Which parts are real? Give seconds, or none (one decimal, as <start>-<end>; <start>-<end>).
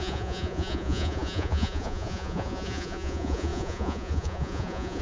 none